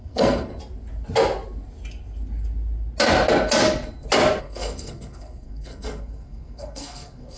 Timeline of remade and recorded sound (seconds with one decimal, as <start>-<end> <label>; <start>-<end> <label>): 0.0-0.5 remade; 0.5-4.4 recorded; 4.4-7.4 remade